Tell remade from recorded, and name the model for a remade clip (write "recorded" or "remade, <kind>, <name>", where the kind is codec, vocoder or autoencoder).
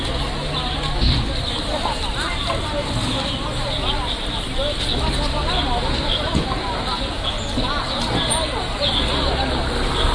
recorded